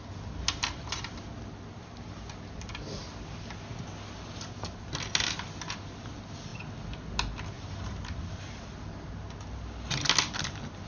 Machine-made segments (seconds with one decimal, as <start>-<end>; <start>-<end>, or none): none